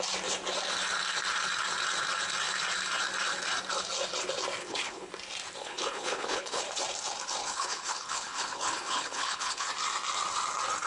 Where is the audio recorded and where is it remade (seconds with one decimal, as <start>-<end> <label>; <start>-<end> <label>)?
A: 0.0-4.6 recorded; 4.6-5.1 remade; 5.1-5.6 recorded; 5.6-6.6 remade; 6.6-7.4 recorded; 7.4-9.7 remade; 9.7-10.9 recorded